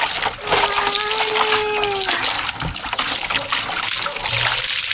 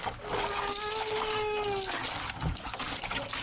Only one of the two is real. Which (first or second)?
first